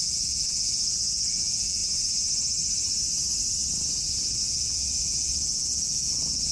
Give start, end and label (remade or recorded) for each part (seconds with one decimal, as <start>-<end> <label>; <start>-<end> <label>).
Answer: 0.0-1.8 remade; 1.8-4.4 recorded; 4.4-6.5 remade